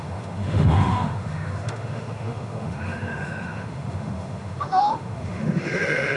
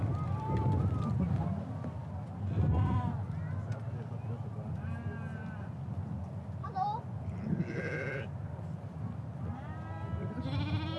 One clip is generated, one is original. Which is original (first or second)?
second